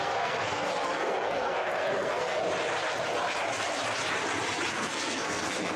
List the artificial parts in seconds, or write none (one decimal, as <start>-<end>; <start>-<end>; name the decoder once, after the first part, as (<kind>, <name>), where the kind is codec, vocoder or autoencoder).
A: 0.0-2.4 (codec, SNAC); 4.7-5.8